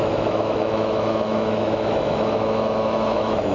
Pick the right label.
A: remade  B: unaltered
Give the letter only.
A